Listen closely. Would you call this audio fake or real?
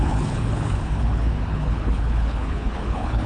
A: fake